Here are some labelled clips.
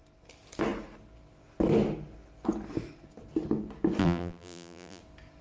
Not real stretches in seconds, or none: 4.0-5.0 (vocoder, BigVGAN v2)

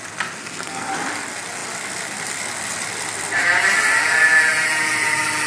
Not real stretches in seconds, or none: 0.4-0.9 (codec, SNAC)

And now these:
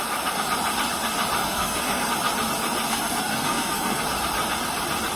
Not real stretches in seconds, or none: 1.4-2.1 (codec, SNAC); 2.9-4.0

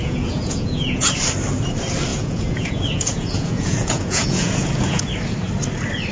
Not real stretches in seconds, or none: 0.0-1.1 (vocoder, Vocos); 2.1-5.1

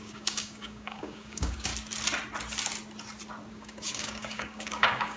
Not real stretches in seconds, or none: 0.0-1.7 (codec, DAC); 3.5-5.2

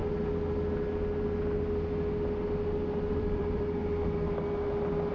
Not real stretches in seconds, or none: 3.1-3.8 (vocoder, BigVGAN v2)

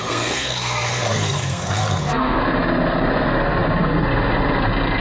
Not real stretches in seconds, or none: 0.0-2.4 (codec, SNAC)